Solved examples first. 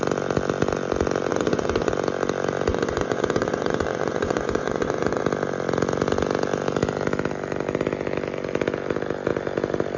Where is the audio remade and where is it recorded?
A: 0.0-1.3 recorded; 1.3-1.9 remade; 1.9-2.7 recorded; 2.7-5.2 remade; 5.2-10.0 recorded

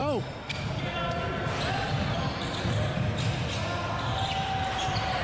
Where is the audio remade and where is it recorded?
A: 0.0-5.2 recorded

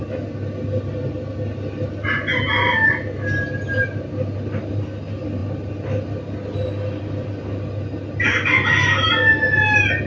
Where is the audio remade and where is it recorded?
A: 0.0-10.1 recorded

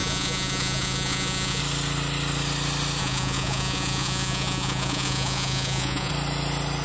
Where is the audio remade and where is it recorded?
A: 0.0-1.6 remade; 1.6-3.0 recorded; 3.0-6.1 remade; 6.1-6.8 recorded

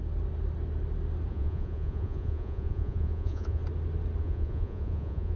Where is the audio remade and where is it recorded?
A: 0.0-1.3 recorded; 1.3-3.6 remade; 3.6-4.2 recorded; 4.2-5.4 remade